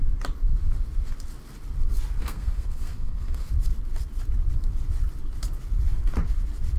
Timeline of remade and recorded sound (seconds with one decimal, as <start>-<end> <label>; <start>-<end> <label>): 0.0-2.2 recorded; 2.2-3.5 remade; 3.5-6.8 recorded